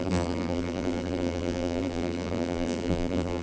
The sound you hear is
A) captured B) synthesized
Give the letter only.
B